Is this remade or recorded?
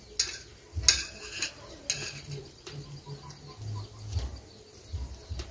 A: recorded